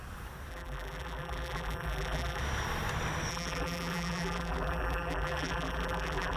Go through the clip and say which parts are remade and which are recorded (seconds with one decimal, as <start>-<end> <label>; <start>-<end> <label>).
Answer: 0.0-0.5 recorded; 0.5-2.4 remade; 2.4-3.3 recorded; 3.3-6.4 remade